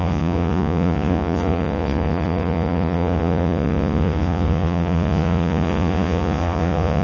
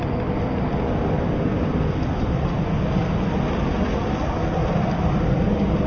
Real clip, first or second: second